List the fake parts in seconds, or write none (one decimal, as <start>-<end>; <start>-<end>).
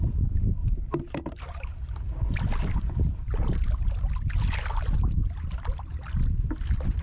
0.6-3.7